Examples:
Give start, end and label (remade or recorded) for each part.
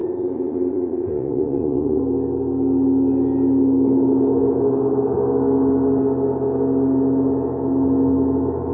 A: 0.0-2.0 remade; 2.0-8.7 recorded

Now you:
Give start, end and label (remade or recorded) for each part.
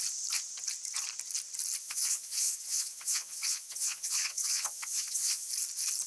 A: 0.0-1.8 recorded; 1.8-5.5 remade; 5.5-6.1 recorded